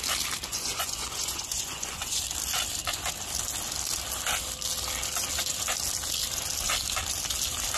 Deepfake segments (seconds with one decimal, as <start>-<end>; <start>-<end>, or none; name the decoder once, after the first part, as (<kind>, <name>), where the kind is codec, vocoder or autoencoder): 0.5-2.2 (vocoder, Vocos)